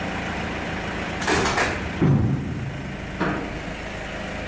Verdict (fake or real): real